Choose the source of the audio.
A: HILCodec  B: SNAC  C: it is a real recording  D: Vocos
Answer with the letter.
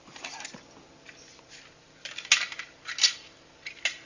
C